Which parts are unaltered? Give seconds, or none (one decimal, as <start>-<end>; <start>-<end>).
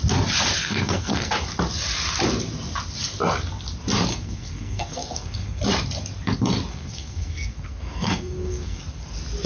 0.0-0.6; 1.3-4.1; 5.6-6.7; 8.8-9.5